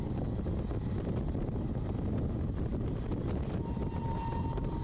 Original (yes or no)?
yes